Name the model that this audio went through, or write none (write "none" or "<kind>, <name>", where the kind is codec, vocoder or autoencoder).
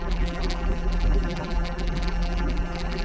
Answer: vocoder, BigVGAN v2